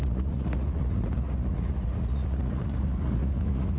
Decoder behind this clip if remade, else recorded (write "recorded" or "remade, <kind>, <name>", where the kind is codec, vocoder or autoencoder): remade, vocoder, Vocos